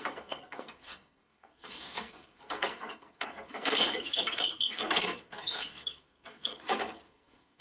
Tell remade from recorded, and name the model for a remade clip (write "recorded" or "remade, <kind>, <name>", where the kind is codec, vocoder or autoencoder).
remade, codec, SNAC